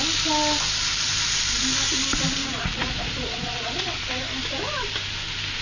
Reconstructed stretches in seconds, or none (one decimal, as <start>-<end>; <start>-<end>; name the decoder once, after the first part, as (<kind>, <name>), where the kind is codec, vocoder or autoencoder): 2.4-4.0 (vocoder, Vocos)